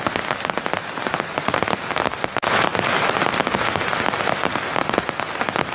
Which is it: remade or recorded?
recorded